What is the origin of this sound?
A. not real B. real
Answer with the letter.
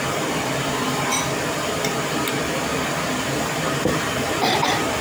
A